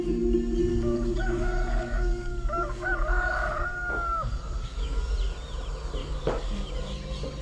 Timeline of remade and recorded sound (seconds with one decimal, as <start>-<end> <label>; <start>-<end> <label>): 0.0-0.7 recorded; 0.7-5.1 remade; 5.1-6.0 recorded; 6.0-6.7 remade; 6.7-7.4 recorded